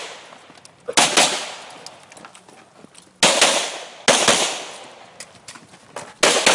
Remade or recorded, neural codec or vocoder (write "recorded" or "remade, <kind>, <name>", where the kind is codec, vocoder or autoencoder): recorded